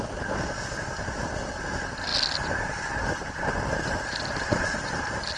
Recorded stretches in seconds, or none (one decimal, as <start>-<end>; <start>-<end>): 0.0-5.4